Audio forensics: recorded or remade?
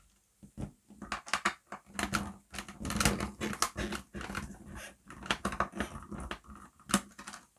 recorded